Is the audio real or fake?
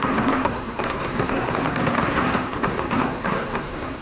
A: fake